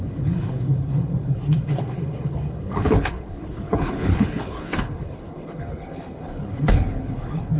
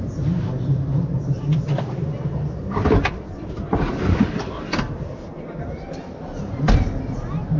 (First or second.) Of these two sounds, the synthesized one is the first